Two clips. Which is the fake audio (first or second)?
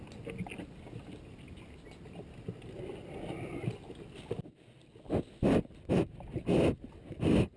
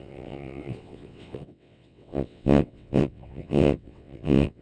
second